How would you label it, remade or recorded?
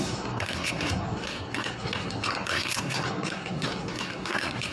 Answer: remade